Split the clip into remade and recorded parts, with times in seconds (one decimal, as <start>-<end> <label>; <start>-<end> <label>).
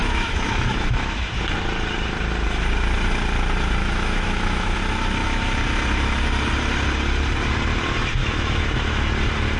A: 0.0-1.4 remade; 1.4-3.8 recorded; 3.8-4.8 remade; 4.8-8.2 recorded; 8.2-9.1 remade; 9.1-9.6 recorded